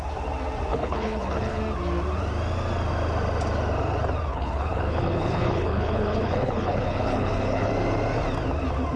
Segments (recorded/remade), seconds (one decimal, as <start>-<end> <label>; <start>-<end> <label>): 0.0-0.7 recorded; 0.7-1.6 remade; 1.6-4.3 recorded; 4.3-7.7 remade; 7.7-9.0 recorded